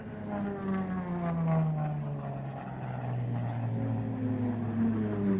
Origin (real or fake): real